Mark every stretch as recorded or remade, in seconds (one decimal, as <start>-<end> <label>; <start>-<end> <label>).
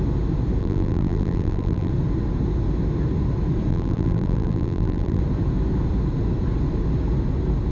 0.0-0.6 recorded; 0.6-1.9 remade; 1.9-3.7 recorded; 3.7-5.2 remade; 5.2-7.7 recorded